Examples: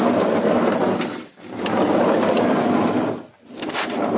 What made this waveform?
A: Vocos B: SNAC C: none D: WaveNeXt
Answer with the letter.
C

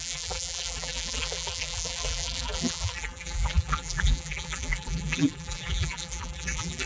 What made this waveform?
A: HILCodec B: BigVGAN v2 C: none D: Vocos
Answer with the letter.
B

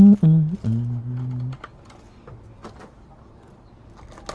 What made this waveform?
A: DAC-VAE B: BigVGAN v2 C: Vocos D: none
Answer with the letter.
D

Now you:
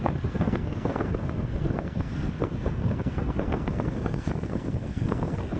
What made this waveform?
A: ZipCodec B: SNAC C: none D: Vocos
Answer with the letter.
B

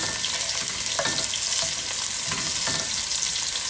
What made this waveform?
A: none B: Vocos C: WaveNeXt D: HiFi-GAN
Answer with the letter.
A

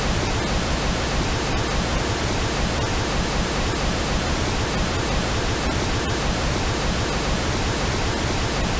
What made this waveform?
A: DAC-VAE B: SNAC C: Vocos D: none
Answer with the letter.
D